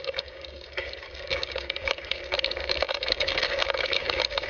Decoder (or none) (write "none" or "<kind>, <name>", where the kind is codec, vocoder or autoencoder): codec, DAC